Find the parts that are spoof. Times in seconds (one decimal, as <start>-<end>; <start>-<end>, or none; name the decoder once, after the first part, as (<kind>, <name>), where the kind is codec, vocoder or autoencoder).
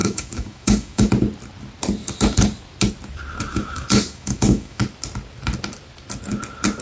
0.0-1.1 (autoencoder, DAC-VAE); 3.5-4.8